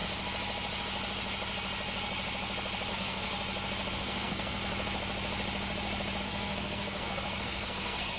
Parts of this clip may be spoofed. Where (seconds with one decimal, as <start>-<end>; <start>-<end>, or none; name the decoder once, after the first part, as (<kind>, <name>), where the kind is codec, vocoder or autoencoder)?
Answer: 2.9-3.3 (codec, SNAC); 3.9-4.6; 6.2-8.2